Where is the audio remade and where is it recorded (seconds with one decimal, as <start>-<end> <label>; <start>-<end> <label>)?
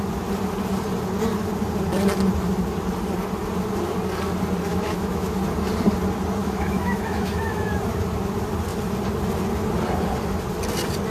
0.0-4.7 recorded; 4.7-5.4 remade; 5.4-6.4 recorded; 6.4-7.7 remade; 7.7-11.1 recorded